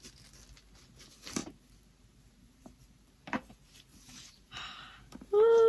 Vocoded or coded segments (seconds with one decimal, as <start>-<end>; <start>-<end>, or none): 1.4-4.8